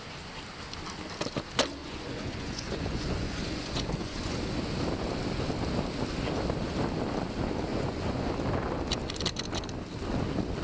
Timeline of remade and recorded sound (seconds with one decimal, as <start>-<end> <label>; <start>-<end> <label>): 0.0-1.8 recorded; 1.8-4.4 remade; 4.4-7.7 recorded; 7.7-8.3 remade; 8.3-10.6 recorded

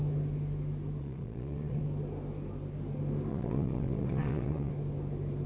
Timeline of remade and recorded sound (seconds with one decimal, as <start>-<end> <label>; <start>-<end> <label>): 0.0-1.0 recorded; 1.0-1.8 remade; 1.8-3.3 recorded; 3.3-4.7 remade; 4.7-5.5 recorded

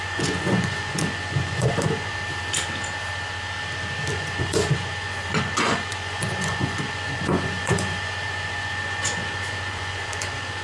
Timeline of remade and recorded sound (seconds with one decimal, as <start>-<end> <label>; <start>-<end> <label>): 0.0-2.1 remade; 2.1-4.1 recorded; 4.1-10.6 remade

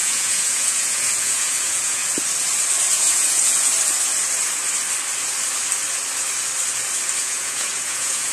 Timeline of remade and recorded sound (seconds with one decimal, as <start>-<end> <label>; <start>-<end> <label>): 0.0-2.0 remade; 2.0-2.9 recorded; 2.9-3.7 remade; 3.7-7.2 recorded; 7.2-8.3 remade

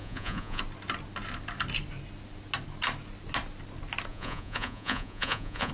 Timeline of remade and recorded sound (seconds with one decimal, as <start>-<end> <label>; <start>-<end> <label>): 0.0-0.6 remade; 0.6-4.1 recorded; 4.1-5.7 remade

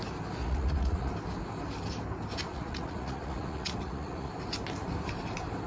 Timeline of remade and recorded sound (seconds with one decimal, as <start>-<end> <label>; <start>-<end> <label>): 0.0-0.4 recorded; 0.4-1.1 remade; 1.1-2.5 recorded; 2.5-4.3 remade; 4.3-5.7 recorded